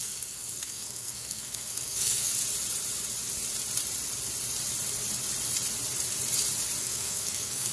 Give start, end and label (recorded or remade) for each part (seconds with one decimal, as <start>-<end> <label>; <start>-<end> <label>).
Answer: 0.0-2.3 remade; 2.3-6.8 recorded; 6.8-7.7 remade